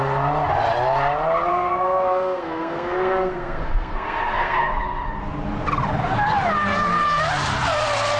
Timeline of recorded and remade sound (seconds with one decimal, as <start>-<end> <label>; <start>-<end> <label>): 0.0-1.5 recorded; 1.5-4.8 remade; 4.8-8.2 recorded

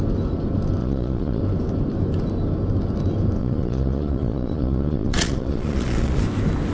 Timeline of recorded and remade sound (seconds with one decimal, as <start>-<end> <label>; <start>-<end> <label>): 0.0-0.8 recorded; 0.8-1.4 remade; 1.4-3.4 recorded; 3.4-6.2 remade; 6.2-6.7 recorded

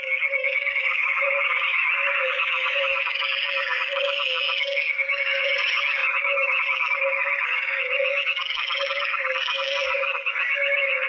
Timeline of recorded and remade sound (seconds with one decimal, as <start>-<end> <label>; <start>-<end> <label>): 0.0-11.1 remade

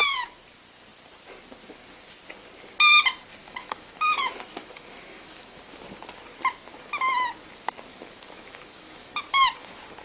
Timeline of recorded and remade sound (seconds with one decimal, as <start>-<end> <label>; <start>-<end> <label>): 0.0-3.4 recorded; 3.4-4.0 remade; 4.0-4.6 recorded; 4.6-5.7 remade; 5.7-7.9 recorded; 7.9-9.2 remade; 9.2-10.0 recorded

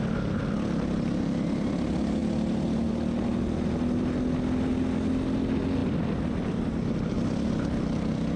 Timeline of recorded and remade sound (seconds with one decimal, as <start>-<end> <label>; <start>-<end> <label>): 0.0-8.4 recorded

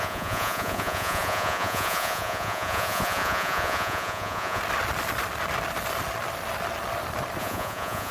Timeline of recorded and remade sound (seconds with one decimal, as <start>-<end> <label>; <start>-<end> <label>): 0.0-4.6 remade; 4.6-7.4 recorded; 7.4-8.1 remade

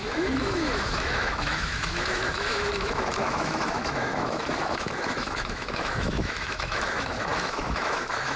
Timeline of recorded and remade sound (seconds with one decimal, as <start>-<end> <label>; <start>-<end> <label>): 0.0-8.4 remade